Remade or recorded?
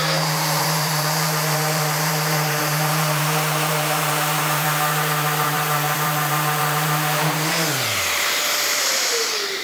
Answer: remade